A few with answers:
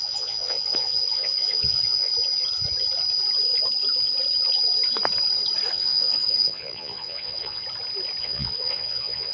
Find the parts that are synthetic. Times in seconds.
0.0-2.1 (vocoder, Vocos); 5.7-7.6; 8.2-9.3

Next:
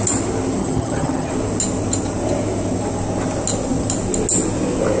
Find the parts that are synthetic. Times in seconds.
0.6-1.3 (vocoder, HiFi-GAN)

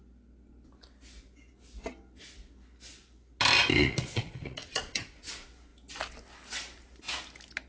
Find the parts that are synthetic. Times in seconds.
3.7-5.3 (vocoder, Vocos)

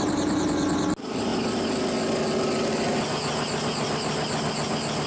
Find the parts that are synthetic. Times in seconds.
none

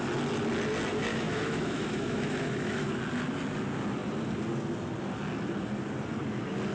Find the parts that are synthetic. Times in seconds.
1.1-2.9 (autoencoder, DAC-VAE)

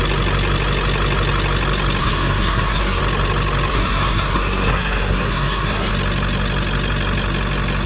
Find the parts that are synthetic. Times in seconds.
2.0-3.0 (codec, SNAC); 3.7-5.9

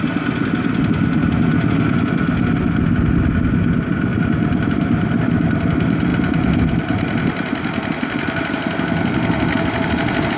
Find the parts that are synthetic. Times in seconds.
none

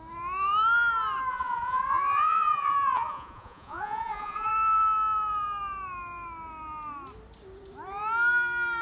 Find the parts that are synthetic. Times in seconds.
1.3-4.5 (vocoder, Vocos)